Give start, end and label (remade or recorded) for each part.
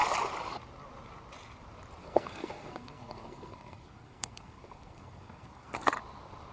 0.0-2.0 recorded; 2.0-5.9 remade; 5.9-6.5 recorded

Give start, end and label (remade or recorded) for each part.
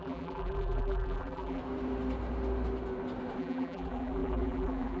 0.0-1.6 remade; 1.6-3.4 recorded; 3.4-5.0 remade